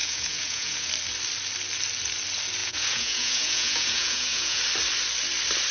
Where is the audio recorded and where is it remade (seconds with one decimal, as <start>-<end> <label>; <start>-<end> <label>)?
0.0-0.9 remade; 0.9-2.6 recorded; 2.6-4.6 remade; 4.6-5.7 recorded